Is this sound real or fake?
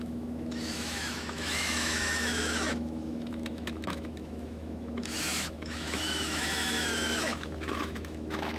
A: fake